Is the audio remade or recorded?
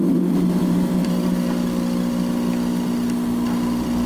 recorded